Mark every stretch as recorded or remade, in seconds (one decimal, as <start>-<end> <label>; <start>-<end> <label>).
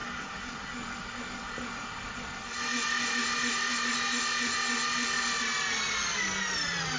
0.0-7.0 recorded